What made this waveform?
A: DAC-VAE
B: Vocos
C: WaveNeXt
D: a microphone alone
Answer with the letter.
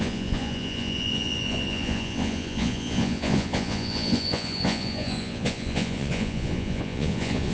B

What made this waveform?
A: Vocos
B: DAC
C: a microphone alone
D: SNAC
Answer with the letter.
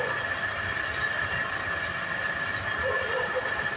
C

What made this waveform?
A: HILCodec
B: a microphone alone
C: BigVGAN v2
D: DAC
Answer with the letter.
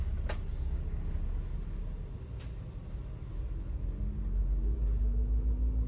B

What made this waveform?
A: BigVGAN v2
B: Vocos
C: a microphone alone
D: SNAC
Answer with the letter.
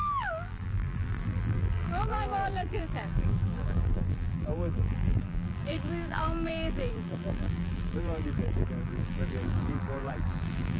A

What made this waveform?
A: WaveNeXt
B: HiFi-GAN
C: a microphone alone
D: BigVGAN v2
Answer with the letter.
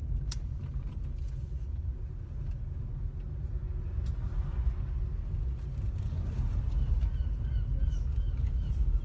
C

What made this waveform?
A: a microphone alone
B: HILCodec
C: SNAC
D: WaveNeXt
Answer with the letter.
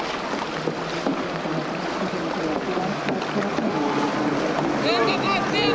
A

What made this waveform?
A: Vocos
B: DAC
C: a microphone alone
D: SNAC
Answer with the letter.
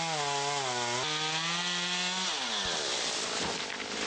C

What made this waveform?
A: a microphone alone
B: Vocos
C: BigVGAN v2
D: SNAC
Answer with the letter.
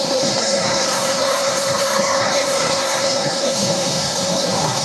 D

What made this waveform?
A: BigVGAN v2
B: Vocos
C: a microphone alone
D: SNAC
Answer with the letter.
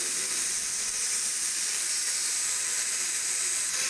A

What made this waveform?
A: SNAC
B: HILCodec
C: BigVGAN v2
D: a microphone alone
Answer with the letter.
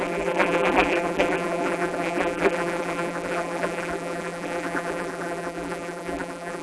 C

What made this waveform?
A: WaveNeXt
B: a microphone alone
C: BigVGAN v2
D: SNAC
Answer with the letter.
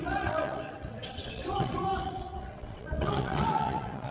A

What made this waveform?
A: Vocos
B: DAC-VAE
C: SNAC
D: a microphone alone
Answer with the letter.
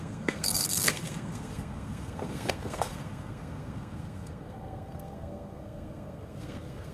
C